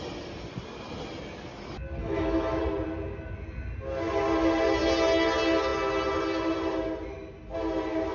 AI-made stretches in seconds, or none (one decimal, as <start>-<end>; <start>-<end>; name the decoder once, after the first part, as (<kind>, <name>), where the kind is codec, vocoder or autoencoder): 2.0-2.6 (autoencoder, DAC-VAE)